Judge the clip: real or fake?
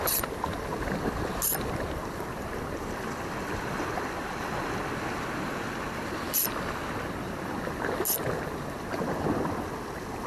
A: real